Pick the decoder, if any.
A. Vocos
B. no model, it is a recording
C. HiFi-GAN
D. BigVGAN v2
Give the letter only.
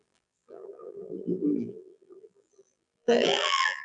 D